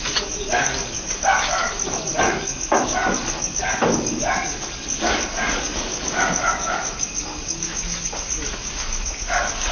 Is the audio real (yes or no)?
no